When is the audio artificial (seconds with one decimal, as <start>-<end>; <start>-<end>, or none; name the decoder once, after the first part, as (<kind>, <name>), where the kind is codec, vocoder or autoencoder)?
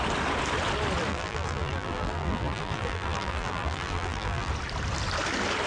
1.1-4.5 (vocoder, BigVGAN v2)